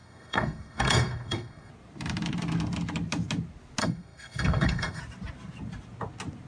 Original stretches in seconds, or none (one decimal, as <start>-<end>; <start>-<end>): 1.7-3.8; 5.0-6.5